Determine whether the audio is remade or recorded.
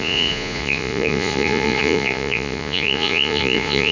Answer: remade